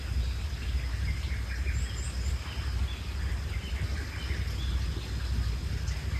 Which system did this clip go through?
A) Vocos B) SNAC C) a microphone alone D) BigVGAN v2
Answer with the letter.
C